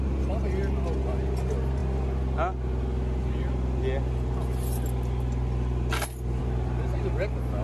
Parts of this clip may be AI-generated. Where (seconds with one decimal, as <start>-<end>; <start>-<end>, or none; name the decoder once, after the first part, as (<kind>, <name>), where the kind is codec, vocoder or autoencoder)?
none